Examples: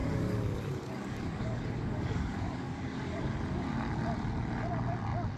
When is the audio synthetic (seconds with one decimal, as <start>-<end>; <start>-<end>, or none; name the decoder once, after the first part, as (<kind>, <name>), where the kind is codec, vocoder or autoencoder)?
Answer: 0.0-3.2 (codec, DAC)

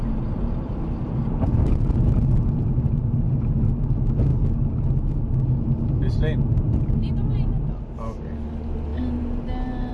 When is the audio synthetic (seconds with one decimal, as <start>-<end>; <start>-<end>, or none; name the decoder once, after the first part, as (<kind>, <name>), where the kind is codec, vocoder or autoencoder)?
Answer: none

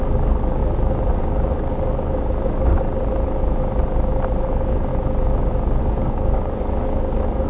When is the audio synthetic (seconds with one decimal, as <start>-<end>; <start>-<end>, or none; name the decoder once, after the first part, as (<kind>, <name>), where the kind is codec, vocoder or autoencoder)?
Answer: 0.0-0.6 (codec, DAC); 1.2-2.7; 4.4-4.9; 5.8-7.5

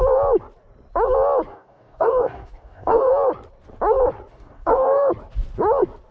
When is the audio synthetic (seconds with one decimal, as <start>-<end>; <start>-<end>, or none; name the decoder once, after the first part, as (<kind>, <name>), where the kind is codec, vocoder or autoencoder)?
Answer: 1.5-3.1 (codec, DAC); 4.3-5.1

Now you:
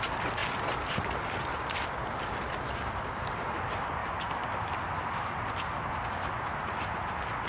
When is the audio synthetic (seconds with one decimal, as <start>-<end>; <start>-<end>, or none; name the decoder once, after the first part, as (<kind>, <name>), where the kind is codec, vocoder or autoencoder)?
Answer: none

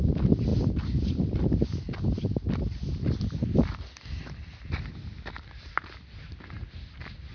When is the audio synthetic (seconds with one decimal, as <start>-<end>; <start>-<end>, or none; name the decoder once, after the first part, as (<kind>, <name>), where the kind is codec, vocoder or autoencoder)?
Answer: none

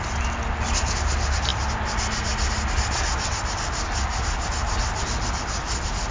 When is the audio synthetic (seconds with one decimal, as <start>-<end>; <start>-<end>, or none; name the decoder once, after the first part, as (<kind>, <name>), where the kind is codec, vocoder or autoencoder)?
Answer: none

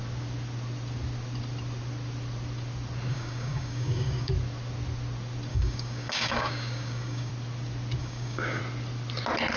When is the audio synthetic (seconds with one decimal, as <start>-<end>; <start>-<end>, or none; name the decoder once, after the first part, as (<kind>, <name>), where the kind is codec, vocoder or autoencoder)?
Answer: 3.1-4.3 (codec, DAC); 5.5-7.3; 8.0-8.6